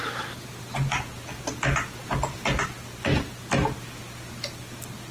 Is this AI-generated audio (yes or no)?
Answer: no